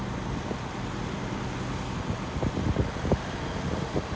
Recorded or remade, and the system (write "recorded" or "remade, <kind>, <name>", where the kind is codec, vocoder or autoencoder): recorded